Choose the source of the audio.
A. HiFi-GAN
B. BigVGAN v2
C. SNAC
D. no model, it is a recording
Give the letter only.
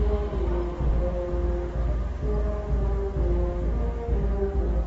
D